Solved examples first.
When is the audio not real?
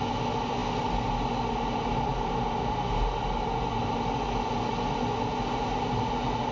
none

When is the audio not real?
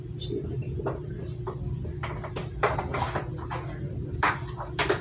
2.4-3.0 (vocoder, BigVGAN v2)